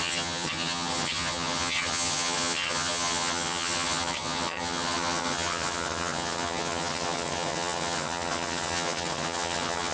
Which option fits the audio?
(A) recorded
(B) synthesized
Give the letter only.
B